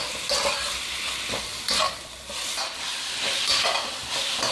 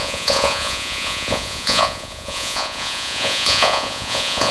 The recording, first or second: first